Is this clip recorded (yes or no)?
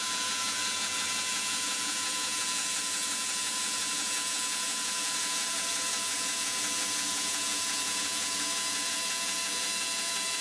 no